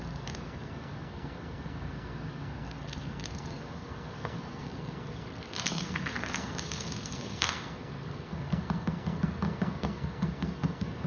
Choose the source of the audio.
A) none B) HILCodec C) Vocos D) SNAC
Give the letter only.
D